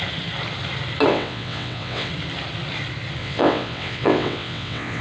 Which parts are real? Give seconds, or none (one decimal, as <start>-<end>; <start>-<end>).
0.0-1.1; 2.1-3.2

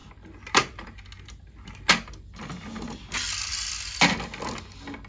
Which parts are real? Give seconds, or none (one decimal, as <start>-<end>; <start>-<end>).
0.0-5.1